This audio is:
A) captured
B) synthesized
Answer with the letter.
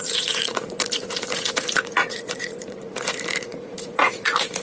B